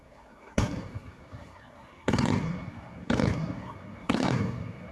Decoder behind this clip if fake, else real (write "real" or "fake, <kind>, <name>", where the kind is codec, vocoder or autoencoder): fake, codec, SNAC